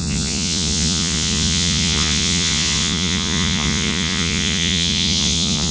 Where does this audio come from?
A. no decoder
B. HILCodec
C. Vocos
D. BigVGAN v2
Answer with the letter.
C